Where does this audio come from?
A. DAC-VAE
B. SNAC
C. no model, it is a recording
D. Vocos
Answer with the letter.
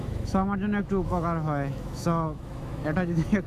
A